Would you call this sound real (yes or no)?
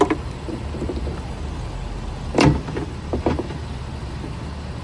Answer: yes